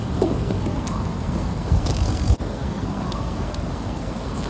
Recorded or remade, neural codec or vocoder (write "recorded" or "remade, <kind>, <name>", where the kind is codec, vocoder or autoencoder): remade, codec, SNAC